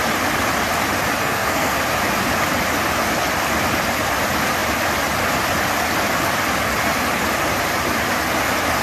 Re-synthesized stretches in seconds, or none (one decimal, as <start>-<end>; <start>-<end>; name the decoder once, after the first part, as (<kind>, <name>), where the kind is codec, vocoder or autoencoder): 1.2-1.8 (codec, SNAC)